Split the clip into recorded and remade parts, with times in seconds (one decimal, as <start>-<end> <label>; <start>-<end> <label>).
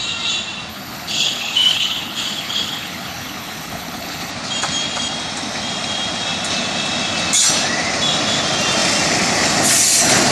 0.0-0.7 recorded; 0.7-4.3 remade; 4.3-10.3 recorded